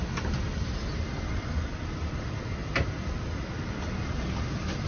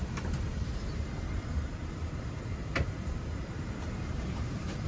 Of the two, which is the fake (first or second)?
second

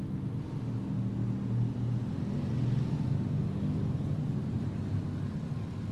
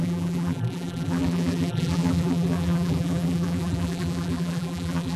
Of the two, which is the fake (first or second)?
second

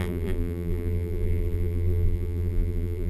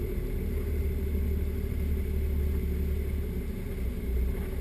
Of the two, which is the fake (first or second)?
first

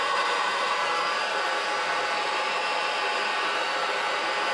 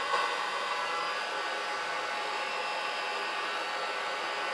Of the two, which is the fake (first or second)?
first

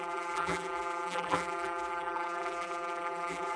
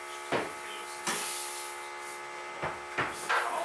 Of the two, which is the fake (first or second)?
first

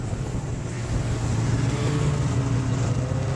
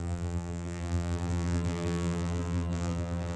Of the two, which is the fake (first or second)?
second